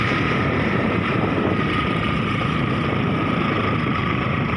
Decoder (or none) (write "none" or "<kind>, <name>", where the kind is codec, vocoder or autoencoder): vocoder, BigVGAN v2